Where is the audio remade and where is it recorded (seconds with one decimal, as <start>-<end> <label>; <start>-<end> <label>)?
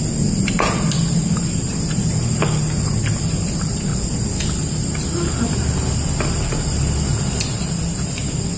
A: 0.0-8.6 recorded